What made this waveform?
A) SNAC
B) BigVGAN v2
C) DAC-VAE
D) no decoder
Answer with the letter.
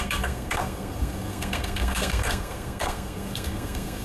A